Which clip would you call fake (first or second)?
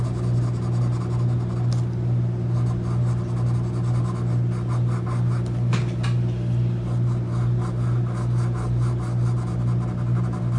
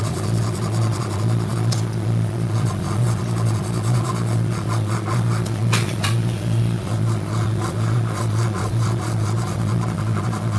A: second